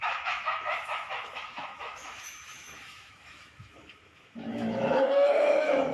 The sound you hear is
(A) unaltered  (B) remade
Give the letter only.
B